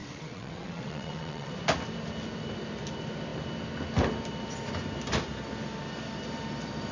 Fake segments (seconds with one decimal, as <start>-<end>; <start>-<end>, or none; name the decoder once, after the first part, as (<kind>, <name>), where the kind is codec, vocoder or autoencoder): 0.0-1.5 (vocoder, WaveNeXt)